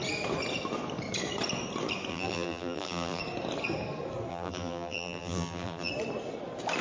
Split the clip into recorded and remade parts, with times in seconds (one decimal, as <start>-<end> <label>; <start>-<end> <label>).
0.0-2.1 recorded; 2.1-3.2 remade; 3.2-4.3 recorded; 4.3-5.9 remade; 5.9-6.8 recorded